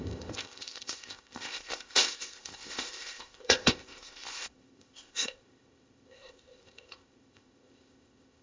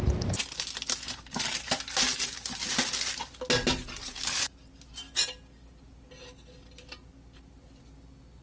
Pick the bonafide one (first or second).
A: second